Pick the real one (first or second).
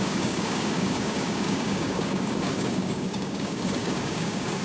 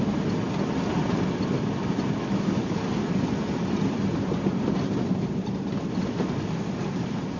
second